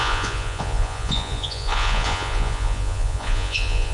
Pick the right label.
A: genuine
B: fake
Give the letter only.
B